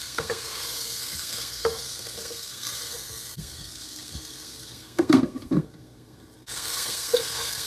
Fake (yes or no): yes